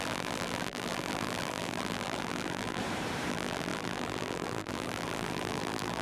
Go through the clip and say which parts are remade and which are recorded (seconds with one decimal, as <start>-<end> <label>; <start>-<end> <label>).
0.0-2.8 remade; 2.8-3.3 recorded; 3.3-6.0 remade